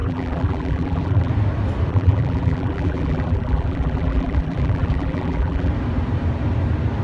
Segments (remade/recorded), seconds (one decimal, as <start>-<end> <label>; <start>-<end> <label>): 0.0-1.3 remade; 1.3-1.9 recorded; 1.9-5.7 remade; 5.7-7.0 recorded